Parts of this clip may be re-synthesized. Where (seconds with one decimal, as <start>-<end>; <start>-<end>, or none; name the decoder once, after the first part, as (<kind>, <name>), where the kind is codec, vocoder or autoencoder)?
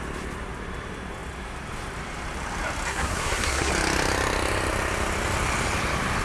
2.9-3.7 (codec, SNAC)